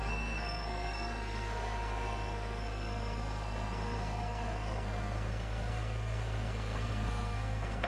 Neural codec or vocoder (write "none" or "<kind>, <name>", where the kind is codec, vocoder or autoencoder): codec, SNAC